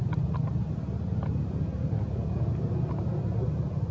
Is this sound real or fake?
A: real